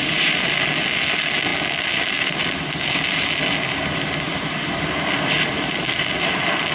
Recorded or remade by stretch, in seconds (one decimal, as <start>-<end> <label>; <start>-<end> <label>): 0.0-6.7 recorded